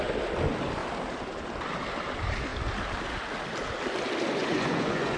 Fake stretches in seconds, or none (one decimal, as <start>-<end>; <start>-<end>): 4.4-5.2